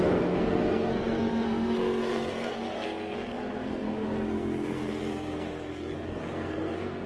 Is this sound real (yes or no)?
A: no